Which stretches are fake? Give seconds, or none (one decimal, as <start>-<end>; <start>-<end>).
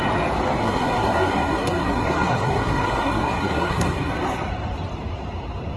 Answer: 0.6-4.1